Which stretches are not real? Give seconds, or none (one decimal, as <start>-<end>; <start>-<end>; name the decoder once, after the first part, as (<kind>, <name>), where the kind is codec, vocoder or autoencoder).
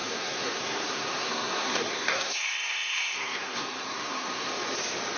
0.0-4.5 (codec, SNAC)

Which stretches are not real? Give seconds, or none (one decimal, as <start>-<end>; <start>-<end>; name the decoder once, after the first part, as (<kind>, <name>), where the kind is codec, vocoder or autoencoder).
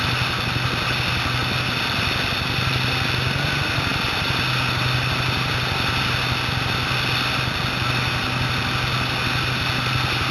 none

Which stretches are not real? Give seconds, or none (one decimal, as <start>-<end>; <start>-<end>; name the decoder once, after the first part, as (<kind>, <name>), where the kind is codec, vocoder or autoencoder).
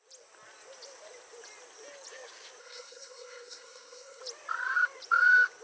2.6-4.2 (codec, SNAC)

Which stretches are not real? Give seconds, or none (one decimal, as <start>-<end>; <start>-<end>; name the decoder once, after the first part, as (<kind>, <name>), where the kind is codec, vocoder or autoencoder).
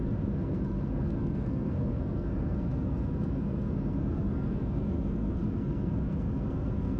0.0-7.0 (codec, SNAC)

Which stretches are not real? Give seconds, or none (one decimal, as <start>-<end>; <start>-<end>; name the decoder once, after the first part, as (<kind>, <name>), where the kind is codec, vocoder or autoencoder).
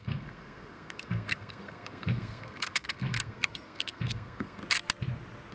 0.0-4.6 (codec, SNAC)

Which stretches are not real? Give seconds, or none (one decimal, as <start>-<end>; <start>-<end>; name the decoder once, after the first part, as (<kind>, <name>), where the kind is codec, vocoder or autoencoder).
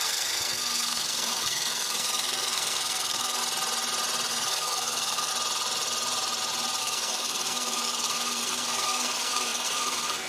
0.0-3.4 (codec, SNAC); 4.3-5.3; 6.8-10.3